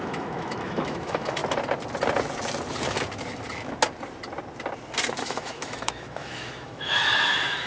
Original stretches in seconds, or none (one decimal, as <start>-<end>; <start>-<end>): 1.4-5.2

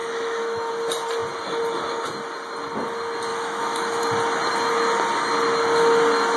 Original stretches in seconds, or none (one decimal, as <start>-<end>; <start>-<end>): 0.7-3.3; 4.0-6.4

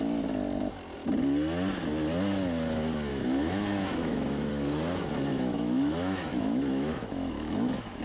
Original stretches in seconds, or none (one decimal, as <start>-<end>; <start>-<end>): 0.0-3.1; 4.5-5.3

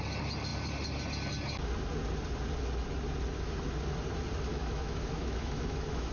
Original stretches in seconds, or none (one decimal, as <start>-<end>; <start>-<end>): 0.0-4.5

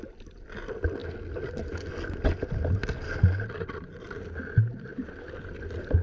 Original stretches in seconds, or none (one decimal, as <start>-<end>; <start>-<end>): 0.0-6.0

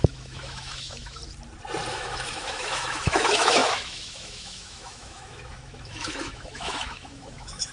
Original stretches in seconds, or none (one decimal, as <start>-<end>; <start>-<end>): 1.2-1.9